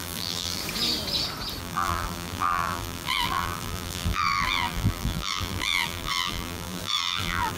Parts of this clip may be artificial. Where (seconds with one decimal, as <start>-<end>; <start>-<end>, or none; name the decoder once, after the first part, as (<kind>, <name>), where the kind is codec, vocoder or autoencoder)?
0.0-0.6 (vocoder, BigVGAN v2); 1.6-7.6